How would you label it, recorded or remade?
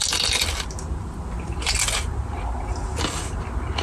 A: recorded